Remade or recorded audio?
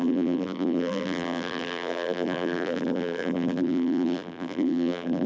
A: remade